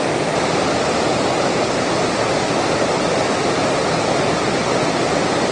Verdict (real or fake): real